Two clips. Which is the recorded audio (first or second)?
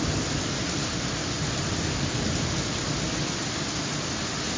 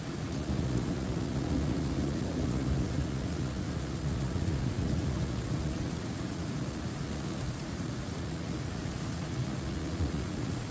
first